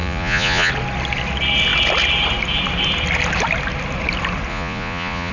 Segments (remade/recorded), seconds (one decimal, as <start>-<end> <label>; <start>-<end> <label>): 0.0-0.7 remade; 0.7-4.5 recorded; 4.5-5.3 remade